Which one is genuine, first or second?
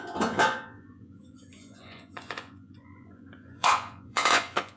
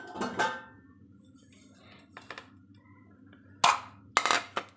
second